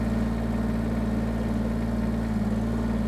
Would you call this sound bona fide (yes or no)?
yes